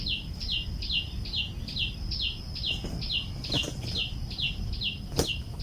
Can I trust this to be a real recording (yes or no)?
yes